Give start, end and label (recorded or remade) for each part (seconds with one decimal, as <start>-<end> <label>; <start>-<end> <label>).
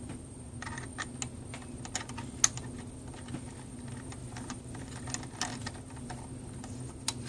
0.0-4.2 recorded; 4.2-4.9 remade; 4.9-7.3 recorded